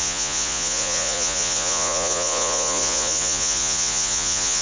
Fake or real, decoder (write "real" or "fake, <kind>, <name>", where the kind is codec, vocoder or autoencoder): fake, vocoder, Vocos